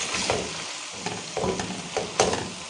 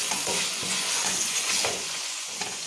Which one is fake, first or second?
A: second